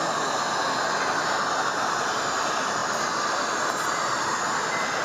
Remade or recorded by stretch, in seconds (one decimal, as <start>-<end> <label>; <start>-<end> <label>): 0.0-5.0 recorded